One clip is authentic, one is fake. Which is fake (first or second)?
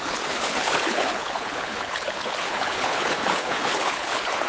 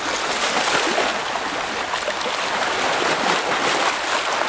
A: first